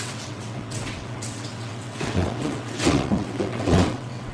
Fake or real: fake